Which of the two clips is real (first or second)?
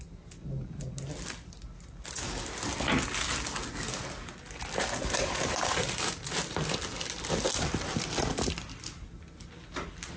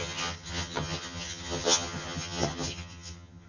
first